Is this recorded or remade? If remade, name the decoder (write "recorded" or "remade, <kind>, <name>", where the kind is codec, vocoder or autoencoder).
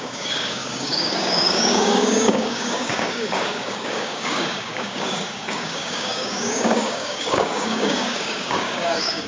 remade, codec, DAC